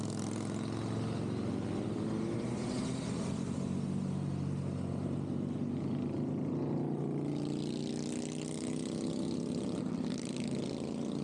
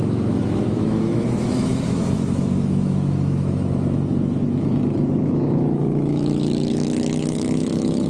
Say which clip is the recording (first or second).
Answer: first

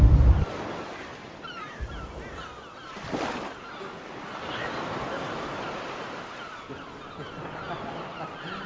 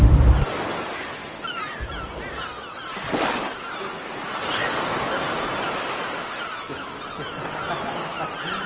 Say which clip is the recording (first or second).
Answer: second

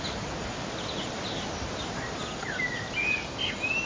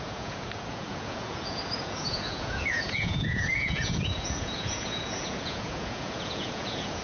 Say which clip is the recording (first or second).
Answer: first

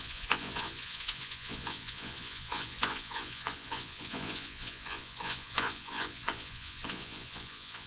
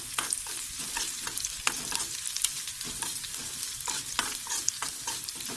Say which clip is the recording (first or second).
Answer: second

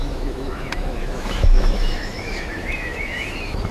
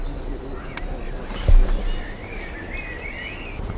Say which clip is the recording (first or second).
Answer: second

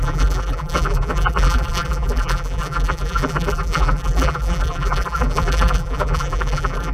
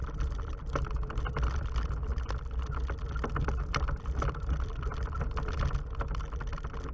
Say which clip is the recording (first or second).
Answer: second